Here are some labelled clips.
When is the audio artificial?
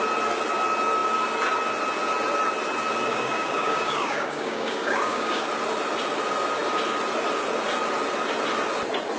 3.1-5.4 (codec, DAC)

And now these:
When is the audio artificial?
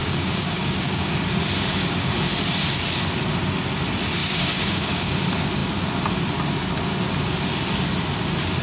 0.0-1.1 (codec, DAC); 4.2-5.1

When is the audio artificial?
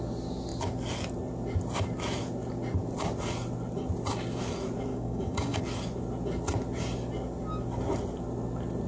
4.9-5.6 (codec, DAC)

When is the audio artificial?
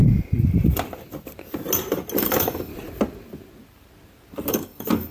2.2-2.7 (codec, DAC); 4.5-5.1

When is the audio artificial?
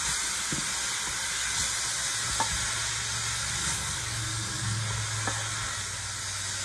3.6-4.8 (codec, DAC)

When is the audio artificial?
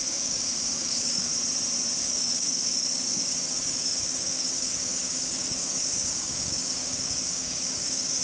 0.0-1.3 (codec, DAC); 2.0-8.2